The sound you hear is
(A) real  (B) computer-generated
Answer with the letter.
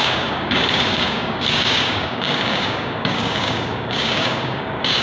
B